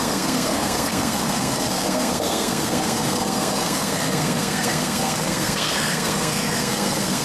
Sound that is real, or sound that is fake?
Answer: fake